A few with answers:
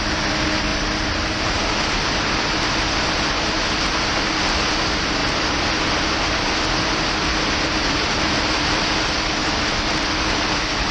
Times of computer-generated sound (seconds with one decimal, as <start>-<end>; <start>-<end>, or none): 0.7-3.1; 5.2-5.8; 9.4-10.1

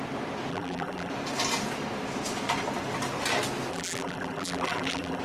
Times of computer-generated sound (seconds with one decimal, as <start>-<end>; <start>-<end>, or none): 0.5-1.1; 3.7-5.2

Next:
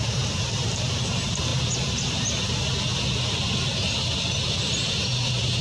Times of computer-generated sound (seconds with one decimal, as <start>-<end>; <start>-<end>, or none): 0.0-1.5; 4.9-5.6

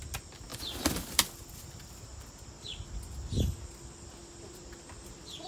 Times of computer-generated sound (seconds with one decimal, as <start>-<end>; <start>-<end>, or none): 0.5-1.1